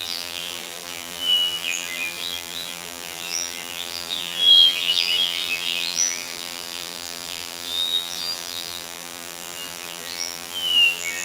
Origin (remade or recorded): remade